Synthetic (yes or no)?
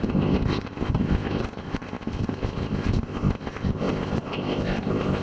yes